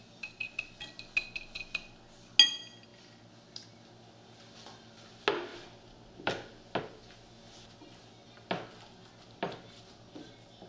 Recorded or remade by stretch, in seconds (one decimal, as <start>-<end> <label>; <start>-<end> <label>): 0.0-10.7 recorded